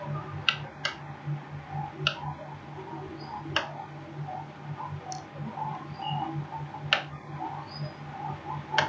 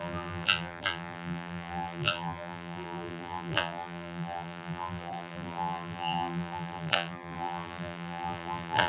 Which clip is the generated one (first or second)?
second